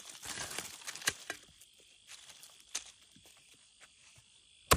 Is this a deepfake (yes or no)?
no